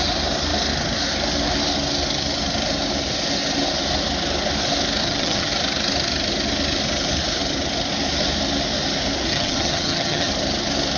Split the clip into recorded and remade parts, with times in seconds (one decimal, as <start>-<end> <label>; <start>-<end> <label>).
0.0-5.0 recorded; 5.0-5.5 remade; 5.5-9.3 recorded; 9.3-10.3 remade; 10.3-11.0 recorded